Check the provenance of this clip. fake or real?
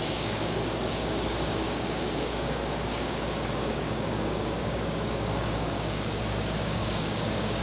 fake